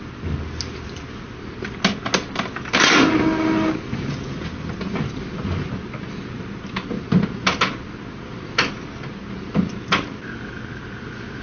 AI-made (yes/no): no